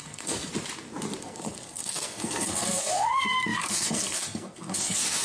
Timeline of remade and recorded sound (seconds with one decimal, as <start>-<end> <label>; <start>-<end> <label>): 0.0-0.5 remade; 0.5-1.2 recorded; 1.2-5.2 remade